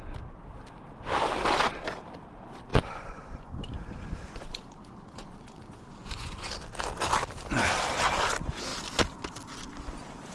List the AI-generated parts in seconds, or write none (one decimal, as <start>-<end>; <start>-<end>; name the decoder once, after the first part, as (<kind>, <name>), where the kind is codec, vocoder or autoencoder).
2.7-6.5 (vocoder, Vocos)